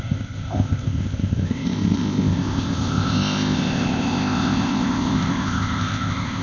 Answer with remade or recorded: remade